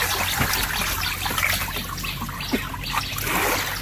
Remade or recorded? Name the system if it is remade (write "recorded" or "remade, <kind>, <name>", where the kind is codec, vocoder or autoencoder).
recorded